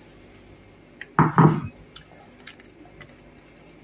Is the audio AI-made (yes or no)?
no